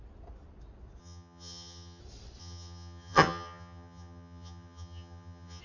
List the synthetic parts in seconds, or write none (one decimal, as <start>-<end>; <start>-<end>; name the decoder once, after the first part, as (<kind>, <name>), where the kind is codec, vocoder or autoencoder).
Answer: 1.0-2.0 (vocoder, HiFi-GAN); 2.4-5.6